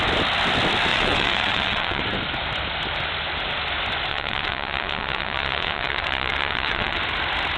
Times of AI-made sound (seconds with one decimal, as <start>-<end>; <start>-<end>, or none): 0.9-2.0; 4.1-7.0